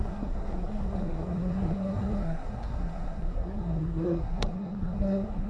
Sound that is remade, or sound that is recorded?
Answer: remade